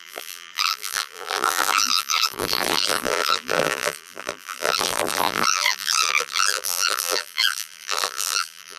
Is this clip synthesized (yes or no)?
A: yes